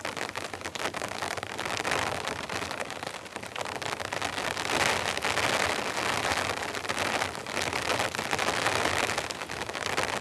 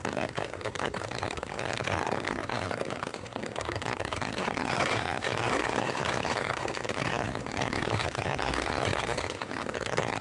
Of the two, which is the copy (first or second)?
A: second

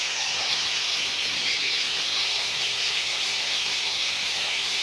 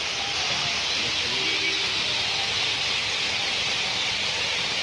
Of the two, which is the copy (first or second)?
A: first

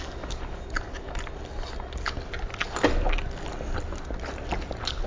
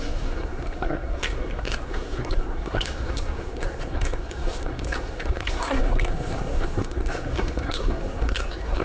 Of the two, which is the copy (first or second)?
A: second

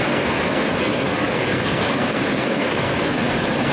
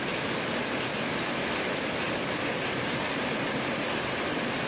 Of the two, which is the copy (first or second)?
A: first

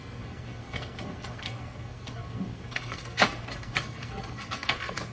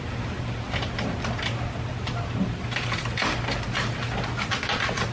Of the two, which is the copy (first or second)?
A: first